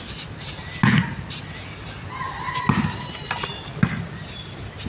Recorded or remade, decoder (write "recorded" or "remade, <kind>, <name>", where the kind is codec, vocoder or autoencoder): recorded